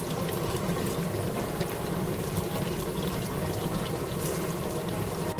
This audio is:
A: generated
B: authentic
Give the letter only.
A